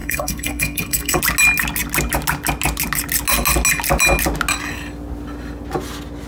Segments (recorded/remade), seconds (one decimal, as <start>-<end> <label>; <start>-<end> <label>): 0.0-1.2 remade; 1.2-6.3 recorded